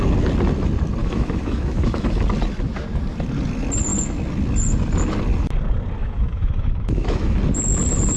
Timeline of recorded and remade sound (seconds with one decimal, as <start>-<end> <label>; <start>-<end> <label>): 0.0-1.0 recorded; 1.0-2.2 remade; 2.2-6.0 recorded; 6.0-7.4 remade; 7.4-8.2 recorded